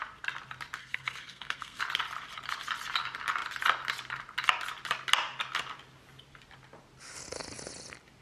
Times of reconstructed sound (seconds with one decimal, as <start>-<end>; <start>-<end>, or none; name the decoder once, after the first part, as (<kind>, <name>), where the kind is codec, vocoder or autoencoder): 0.8-1.8 (codec, SNAC)